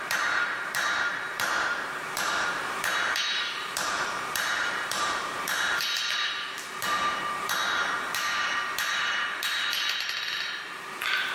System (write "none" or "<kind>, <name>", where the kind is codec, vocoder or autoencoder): vocoder, BigVGAN v2